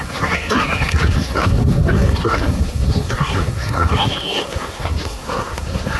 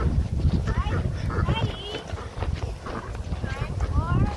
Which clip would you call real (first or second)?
second